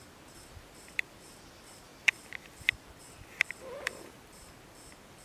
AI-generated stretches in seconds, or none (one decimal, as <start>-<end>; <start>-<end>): none